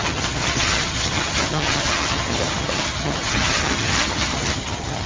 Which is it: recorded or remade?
remade